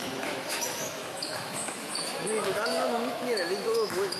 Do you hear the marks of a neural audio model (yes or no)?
yes